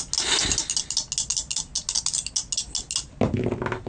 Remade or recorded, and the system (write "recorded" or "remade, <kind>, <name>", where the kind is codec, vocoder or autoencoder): recorded